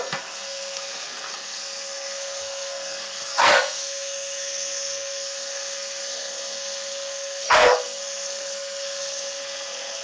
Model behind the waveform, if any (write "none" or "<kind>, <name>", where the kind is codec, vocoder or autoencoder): codec, SNAC